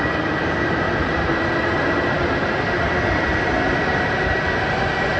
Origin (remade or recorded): recorded